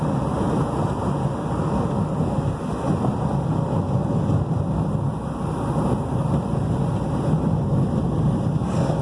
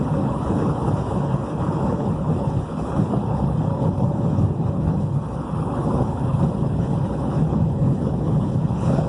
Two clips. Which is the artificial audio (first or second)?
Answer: second